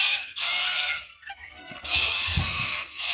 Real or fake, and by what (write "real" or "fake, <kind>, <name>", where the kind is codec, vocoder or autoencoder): fake, codec, SNAC